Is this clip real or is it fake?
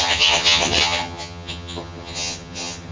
fake